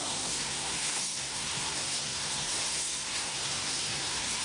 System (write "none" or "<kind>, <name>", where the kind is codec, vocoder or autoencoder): codec, SNAC